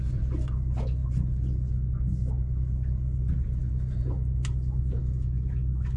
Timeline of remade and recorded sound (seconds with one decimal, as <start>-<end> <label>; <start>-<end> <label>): 0.0-5.0 recorded; 5.0-6.0 remade